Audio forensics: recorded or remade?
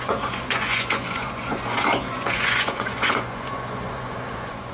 remade